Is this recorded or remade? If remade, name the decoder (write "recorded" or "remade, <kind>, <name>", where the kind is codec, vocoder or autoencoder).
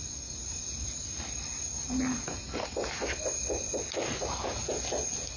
recorded